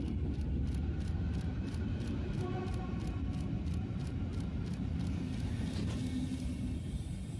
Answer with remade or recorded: recorded